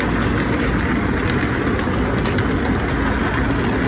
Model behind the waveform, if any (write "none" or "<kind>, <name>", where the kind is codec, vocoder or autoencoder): none